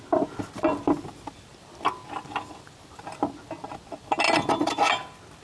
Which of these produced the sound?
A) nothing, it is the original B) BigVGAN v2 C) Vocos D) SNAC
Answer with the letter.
A